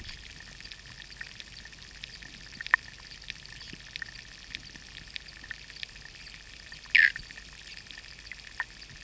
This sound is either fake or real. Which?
real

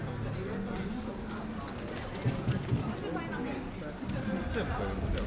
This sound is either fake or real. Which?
real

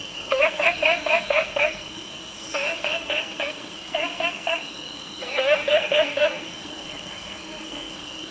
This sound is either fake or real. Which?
fake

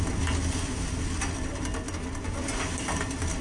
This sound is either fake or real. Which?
real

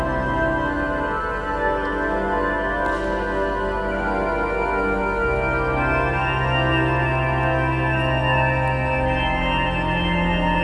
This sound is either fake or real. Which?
real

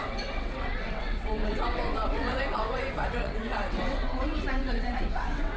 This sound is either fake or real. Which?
fake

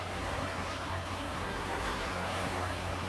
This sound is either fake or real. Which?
fake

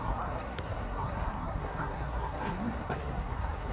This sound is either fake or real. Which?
fake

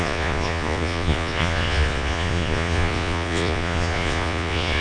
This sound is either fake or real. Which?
fake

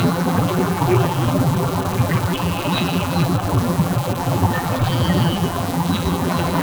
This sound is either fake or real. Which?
fake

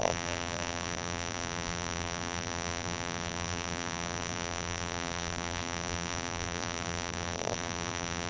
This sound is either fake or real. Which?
fake